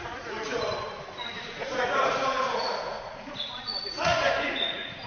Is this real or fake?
fake